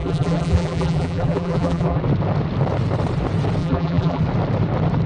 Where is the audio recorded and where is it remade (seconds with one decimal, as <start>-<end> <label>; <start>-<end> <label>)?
0.0-2.0 remade; 2.0-3.6 recorded; 3.6-4.2 remade; 4.2-5.1 recorded